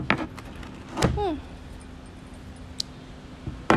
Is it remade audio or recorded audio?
recorded